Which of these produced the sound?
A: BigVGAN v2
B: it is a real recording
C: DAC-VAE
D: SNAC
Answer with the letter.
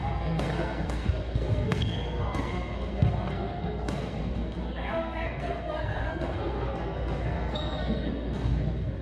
D